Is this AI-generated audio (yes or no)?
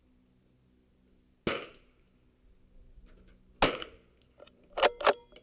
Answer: no